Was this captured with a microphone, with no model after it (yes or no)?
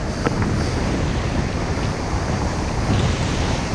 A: yes